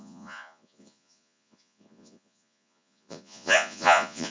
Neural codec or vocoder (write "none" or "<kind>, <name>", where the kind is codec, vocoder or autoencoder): vocoder, Vocos